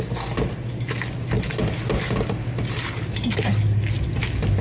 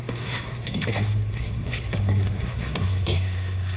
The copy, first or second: second